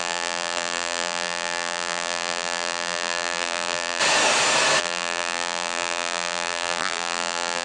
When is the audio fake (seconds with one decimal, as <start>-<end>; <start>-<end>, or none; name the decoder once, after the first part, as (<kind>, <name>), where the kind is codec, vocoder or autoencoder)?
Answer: 0.0-4.0 (vocoder, BigVGAN v2); 4.8-7.6